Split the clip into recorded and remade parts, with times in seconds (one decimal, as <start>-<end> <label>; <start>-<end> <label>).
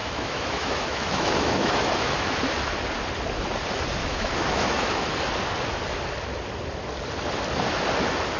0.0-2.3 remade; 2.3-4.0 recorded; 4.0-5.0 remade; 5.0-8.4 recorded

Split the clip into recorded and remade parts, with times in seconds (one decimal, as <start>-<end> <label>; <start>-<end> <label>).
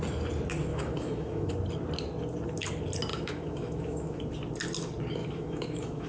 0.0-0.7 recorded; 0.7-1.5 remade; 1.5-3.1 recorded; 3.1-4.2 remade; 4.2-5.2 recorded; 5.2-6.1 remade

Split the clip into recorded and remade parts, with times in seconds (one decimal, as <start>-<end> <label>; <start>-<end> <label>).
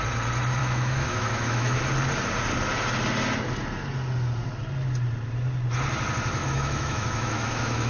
0.0-0.6 recorded; 0.6-1.8 remade; 1.8-6.4 recorded; 6.4-7.9 remade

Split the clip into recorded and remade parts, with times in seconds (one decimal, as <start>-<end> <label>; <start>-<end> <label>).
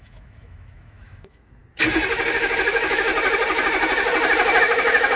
0.0-1.6 remade; 1.6-2.1 recorded; 2.1-3.1 remade; 3.1-4.6 recorded; 4.6-5.2 remade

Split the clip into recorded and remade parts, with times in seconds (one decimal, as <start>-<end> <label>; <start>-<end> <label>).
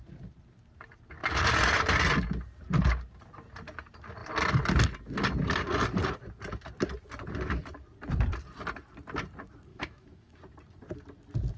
0.0-9.7 recorded; 9.7-10.4 remade; 10.4-11.6 recorded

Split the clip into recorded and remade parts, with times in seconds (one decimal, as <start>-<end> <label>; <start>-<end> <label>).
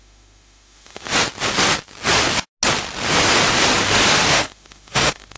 0.0-1.1 remade; 1.1-4.3 recorded; 4.3-5.4 remade